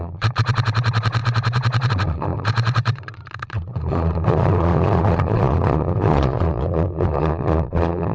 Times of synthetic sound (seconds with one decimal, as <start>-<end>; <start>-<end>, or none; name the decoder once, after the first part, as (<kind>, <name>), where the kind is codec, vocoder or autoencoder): 0.0-8.1 (vocoder, Vocos)